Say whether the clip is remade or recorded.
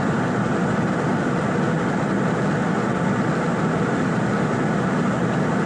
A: recorded